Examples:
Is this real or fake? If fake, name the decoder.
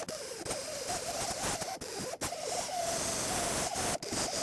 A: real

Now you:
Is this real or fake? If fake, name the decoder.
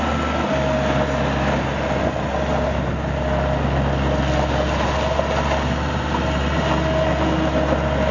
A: real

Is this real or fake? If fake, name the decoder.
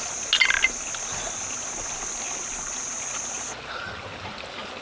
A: real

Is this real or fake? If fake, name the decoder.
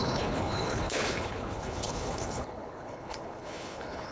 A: fake, codec, HILCodec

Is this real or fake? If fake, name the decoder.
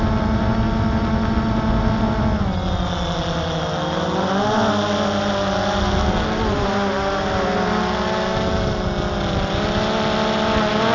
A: real